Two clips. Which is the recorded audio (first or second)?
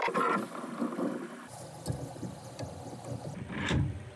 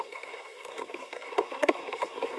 first